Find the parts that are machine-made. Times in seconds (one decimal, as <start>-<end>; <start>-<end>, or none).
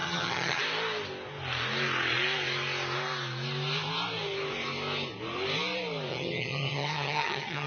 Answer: 0.0-0.6; 6.1-7.7